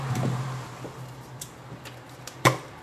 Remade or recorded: remade